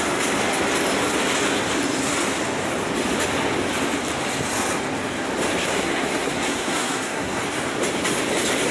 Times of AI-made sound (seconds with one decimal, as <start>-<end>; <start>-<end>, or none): 5.6-7.4